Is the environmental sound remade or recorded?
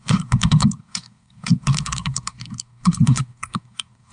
remade